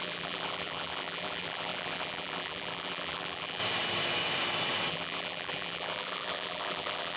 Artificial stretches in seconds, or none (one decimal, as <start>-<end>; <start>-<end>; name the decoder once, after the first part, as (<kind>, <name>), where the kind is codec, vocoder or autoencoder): 0.0-3.6 (vocoder, BigVGAN v2); 4.9-7.2